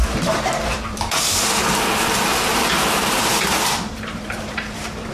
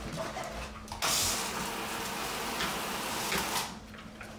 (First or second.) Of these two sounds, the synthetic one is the first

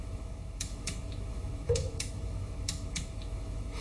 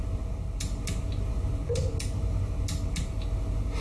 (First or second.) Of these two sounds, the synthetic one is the first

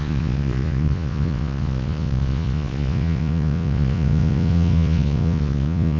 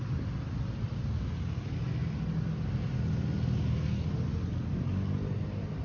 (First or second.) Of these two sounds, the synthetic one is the first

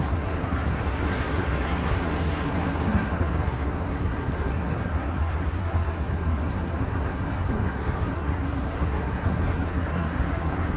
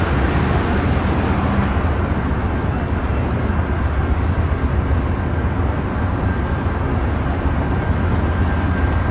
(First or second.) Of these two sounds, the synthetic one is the first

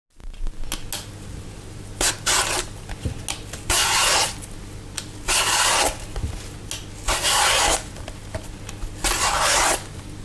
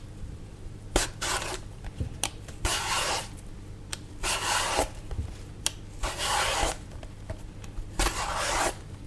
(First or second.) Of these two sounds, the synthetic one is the second